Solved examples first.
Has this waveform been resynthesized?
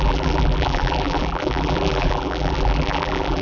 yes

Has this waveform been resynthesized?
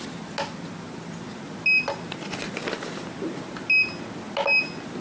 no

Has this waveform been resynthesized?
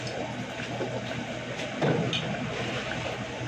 no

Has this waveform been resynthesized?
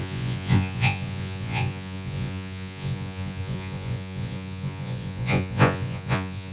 yes